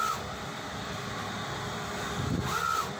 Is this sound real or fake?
real